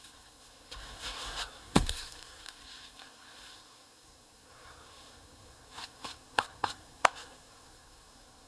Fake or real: fake